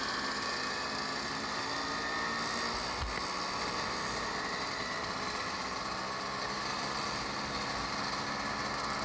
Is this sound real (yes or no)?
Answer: yes